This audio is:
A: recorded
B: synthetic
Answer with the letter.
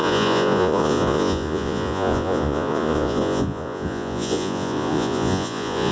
B